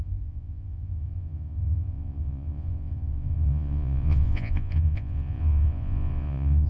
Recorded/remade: remade